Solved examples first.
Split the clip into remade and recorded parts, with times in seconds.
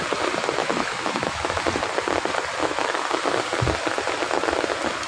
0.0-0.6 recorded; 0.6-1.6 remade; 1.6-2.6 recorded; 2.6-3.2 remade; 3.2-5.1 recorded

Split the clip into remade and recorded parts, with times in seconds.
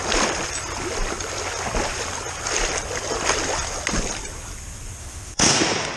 0.0-5.0 recorded; 5.0-5.6 remade; 5.6-6.0 recorded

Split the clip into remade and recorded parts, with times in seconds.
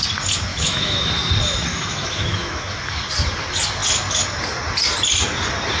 0.0-0.5 recorded; 0.5-1.1 remade; 1.1-1.7 recorded; 1.7-2.7 remade; 2.7-5.8 recorded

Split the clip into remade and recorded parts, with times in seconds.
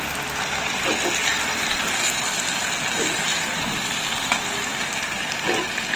0.0-6.0 recorded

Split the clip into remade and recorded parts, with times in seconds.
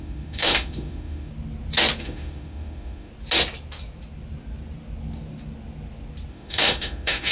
0.0-1.3 remade; 1.3-2.0 recorded; 2.0-3.1 remade; 3.1-6.3 recorded; 6.3-7.3 remade